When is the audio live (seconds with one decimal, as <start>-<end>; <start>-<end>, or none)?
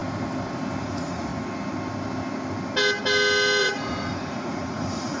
0.0-0.8; 1.3-3.6